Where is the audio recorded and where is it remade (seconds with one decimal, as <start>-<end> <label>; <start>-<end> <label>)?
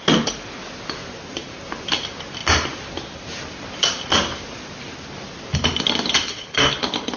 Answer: 0.0-1.0 recorded; 1.0-1.6 remade; 1.6-7.2 recorded